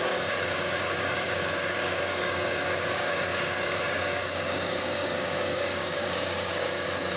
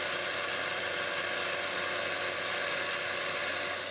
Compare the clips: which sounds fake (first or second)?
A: first